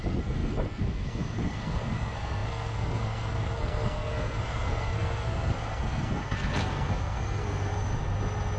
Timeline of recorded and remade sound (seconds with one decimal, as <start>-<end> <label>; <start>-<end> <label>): 0.0-7.7 remade; 7.7-8.6 recorded